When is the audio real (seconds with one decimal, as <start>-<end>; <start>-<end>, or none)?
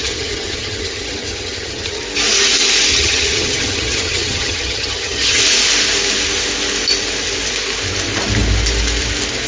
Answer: 2.0-2.9; 5.4-9.5